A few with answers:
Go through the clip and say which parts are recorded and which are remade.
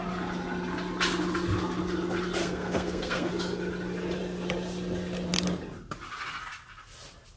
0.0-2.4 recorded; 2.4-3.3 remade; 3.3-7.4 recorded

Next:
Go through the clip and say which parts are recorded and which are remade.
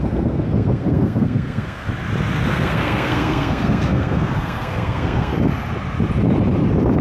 0.0-1.9 remade; 1.9-2.5 recorded; 2.5-5.3 remade; 5.3-7.0 recorded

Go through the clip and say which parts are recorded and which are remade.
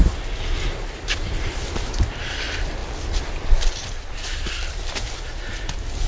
0.0-6.1 recorded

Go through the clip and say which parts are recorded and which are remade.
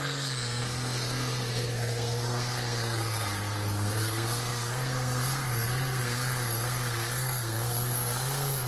0.0-8.7 remade